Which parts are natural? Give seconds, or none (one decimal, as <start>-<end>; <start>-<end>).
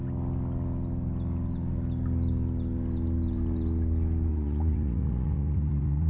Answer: 0.0-4.3